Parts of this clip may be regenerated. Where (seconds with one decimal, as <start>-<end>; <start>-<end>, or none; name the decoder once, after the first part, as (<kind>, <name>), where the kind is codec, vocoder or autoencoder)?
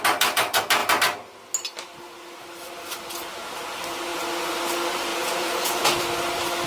5.1-6.0 (vocoder, Vocos)